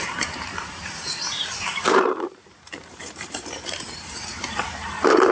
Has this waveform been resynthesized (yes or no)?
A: yes